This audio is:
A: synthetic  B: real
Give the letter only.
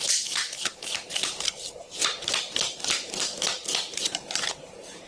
A